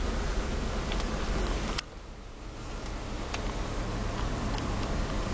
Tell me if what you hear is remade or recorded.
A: recorded